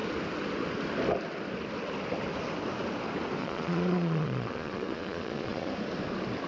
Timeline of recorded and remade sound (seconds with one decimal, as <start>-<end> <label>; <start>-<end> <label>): 0.0-3.4 recorded; 3.4-5.7 remade; 5.7-6.5 recorded